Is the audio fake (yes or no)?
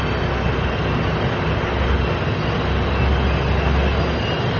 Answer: no